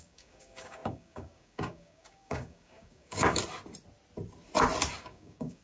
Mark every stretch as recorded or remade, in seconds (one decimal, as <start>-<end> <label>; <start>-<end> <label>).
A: 0.0-3.4 remade; 3.4-5.0 recorded; 5.0-5.6 remade